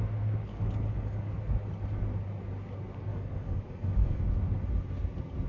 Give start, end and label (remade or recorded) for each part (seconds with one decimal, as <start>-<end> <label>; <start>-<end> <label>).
0.0-0.5 recorded; 0.5-1.3 remade; 1.3-3.1 recorded; 3.1-4.2 remade; 4.2-5.5 recorded